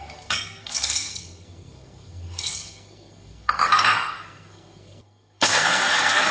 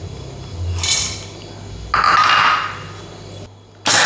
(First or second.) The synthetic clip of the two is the first